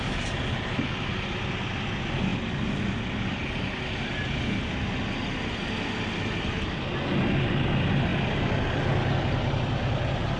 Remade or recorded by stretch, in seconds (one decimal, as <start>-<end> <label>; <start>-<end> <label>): 0.0-10.4 recorded